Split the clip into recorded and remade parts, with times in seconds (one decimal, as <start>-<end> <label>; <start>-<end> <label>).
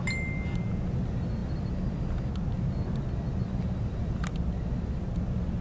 0.0-5.6 recorded